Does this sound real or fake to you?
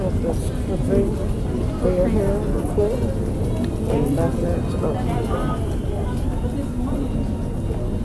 real